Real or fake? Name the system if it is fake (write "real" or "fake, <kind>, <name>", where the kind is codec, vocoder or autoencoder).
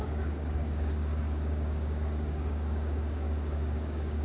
fake, codec, DAC